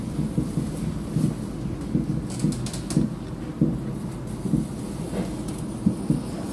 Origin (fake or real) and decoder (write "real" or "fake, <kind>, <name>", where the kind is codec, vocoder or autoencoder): real